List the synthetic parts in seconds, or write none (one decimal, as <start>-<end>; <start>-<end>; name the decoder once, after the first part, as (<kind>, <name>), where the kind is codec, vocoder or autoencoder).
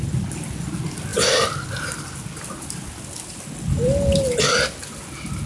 none